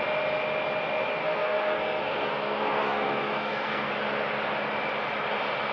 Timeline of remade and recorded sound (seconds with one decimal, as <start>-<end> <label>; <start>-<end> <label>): 0.0-1.2 recorded; 1.2-3.9 remade; 3.9-5.7 recorded